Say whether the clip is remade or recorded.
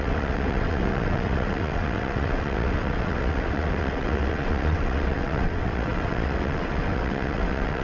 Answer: remade